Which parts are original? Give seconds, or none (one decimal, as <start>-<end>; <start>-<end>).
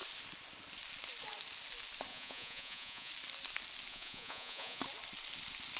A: 0.0-2.1; 3.1-3.9; 4.8-5.8